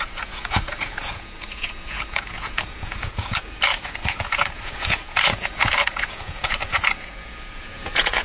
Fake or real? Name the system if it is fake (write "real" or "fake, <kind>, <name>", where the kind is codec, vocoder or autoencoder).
fake, vocoder, Vocos